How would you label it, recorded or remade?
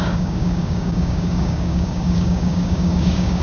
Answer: remade